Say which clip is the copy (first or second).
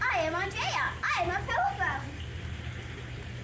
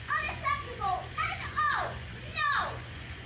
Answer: second